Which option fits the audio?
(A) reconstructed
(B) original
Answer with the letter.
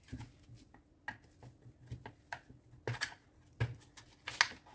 B